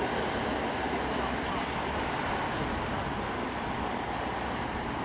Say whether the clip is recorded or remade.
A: remade